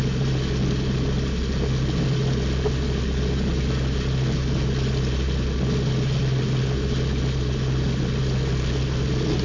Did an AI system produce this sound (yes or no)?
no